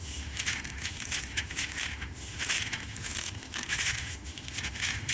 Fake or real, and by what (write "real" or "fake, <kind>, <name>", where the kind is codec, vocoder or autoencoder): fake, autoencoder, DAC-VAE